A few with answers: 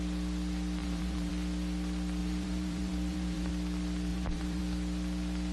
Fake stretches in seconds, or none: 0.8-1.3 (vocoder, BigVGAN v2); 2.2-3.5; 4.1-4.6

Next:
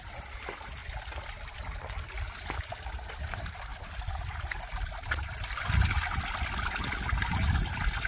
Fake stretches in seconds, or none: 3.7-5.8 (vocoder, BigVGAN v2)

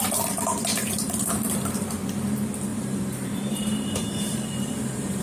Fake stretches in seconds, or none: 0.7-1.3 (vocoder, BigVGAN v2); 2.7-5.2

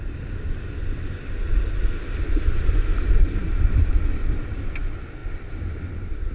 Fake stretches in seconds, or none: 2.9-3.9 (vocoder, BigVGAN v2)

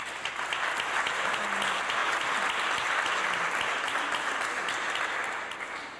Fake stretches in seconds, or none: none

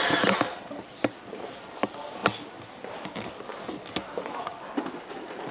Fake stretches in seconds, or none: 0.0-3.5 (vocoder, BigVGAN v2); 4.2-5.5